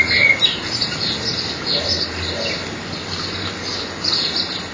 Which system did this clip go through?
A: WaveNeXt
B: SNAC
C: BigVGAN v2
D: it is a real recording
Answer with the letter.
D